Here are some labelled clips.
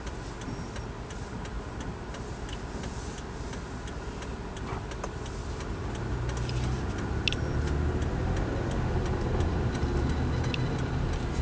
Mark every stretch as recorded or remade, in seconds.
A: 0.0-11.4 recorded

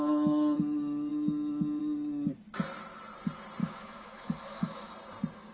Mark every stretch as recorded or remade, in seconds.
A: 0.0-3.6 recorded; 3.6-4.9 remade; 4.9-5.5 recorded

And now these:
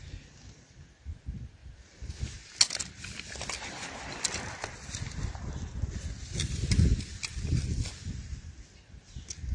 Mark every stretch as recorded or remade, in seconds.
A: 0.0-9.5 recorded

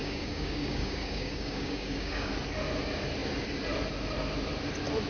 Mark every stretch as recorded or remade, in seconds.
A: 0.0-2.3 remade; 2.3-5.1 recorded

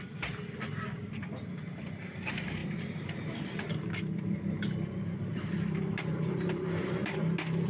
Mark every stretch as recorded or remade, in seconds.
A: 0.0-2.6 recorded; 2.6-7.2 remade; 7.2-7.7 recorded

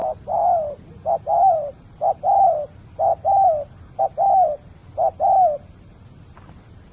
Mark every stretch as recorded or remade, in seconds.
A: 0.0-6.9 recorded